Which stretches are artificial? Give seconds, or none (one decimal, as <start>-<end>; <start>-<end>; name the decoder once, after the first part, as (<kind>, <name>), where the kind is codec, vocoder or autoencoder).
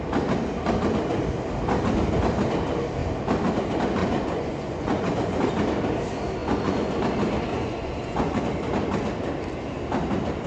4.0-5.4 (vocoder, Vocos); 6.4-6.9; 7.5-8.4